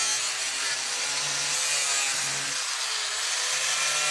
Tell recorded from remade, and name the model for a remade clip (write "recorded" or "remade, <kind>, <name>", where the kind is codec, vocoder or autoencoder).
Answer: recorded